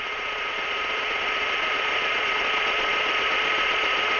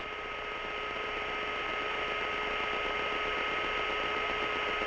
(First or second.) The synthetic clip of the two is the first